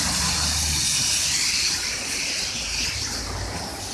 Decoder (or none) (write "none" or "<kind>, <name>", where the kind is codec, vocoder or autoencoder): none